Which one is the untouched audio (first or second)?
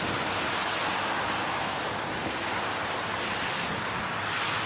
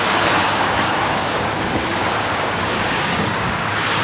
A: first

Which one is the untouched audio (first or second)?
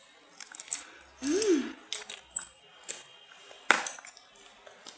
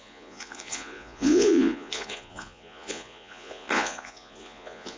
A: first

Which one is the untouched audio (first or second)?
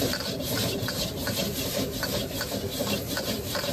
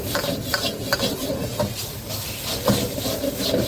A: second